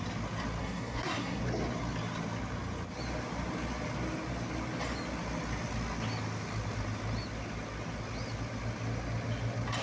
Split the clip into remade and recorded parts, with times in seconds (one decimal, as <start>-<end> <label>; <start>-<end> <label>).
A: 0.0-0.6 recorded; 0.6-1.4 remade; 1.4-9.8 recorded